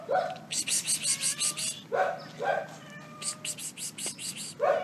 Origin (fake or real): real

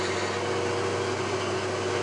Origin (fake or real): real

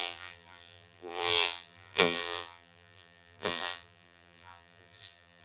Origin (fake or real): fake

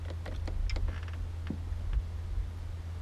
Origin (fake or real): real